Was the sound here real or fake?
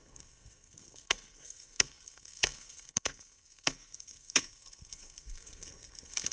fake